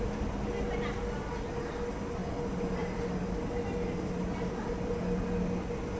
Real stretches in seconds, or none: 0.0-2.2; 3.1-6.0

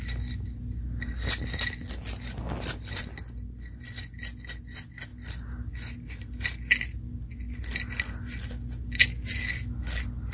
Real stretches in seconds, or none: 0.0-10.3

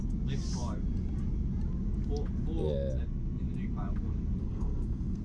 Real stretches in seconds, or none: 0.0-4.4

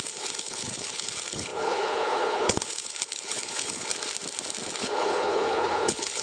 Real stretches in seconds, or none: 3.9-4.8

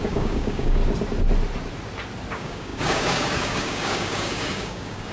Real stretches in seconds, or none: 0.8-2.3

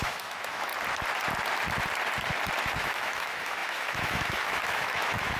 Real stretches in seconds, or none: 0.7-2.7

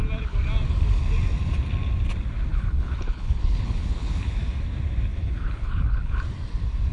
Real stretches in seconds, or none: 0.0-2.5; 4.4-5.1; 6.2-6.9